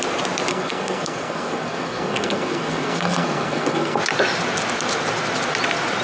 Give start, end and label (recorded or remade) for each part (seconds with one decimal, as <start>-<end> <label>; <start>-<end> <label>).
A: 0.0-0.5 recorded; 0.5-4.0 remade; 4.0-6.0 recorded